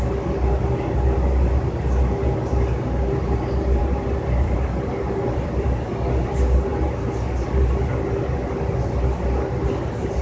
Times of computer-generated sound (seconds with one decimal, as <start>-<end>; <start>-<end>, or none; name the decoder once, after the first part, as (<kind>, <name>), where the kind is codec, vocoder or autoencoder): 3.8-5.7 (vocoder, BigVGAN v2)